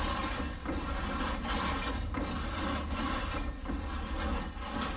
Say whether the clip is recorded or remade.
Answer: recorded